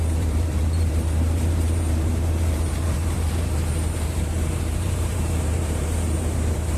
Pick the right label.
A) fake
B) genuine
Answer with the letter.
A